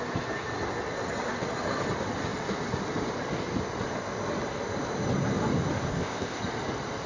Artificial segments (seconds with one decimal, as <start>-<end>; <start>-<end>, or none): 5.9-6.4